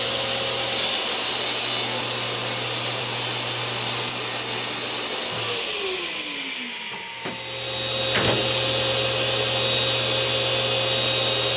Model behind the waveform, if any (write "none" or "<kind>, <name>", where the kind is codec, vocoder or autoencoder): none